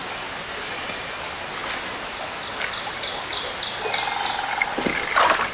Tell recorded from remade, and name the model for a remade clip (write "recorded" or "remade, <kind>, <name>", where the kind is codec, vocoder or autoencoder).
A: recorded